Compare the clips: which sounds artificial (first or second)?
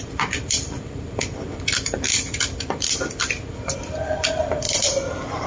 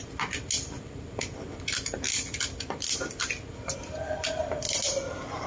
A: first